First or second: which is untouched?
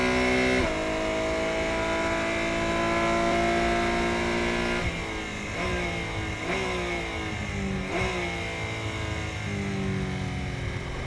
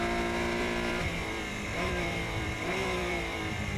first